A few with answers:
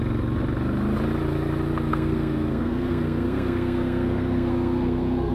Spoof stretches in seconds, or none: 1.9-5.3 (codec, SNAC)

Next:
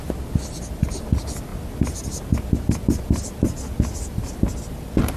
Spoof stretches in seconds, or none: none

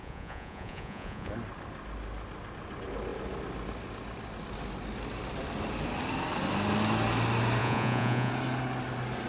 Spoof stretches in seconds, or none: 0.0-1.3 (vocoder, Vocos); 7.6-8.3

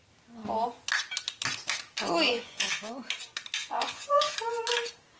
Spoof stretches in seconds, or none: 2.3-2.9 (vocoder, Vocos); 3.6-4.3